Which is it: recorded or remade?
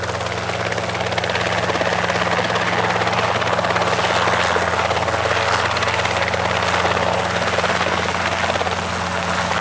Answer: recorded